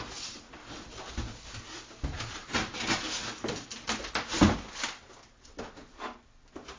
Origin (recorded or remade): recorded